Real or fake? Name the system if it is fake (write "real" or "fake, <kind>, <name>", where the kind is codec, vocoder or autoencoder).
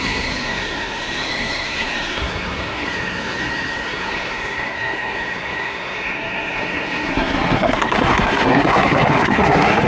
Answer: fake, codec, SNAC